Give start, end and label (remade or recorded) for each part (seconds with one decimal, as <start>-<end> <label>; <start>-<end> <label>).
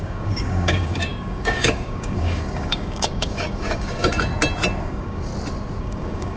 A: 0.0-4.3 remade; 4.3-4.8 recorded; 4.8-5.3 remade; 5.3-5.8 recorded; 5.8-6.4 remade